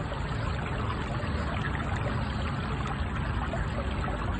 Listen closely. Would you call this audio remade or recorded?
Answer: recorded